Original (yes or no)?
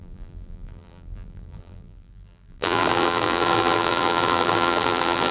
no